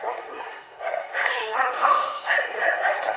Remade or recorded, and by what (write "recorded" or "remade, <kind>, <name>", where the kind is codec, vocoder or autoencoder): remade, codec, SNAC